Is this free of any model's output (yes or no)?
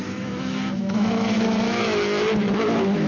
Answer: no